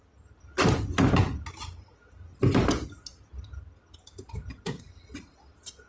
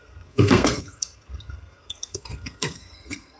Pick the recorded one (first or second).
first